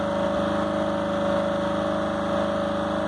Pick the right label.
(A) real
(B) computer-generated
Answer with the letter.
A